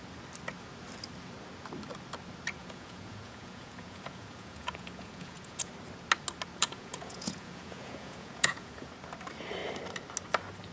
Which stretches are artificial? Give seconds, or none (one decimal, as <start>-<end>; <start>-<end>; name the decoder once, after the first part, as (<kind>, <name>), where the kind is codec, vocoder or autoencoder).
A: 2.6-5.7 (vocoder, Vocos); 6.6-8.9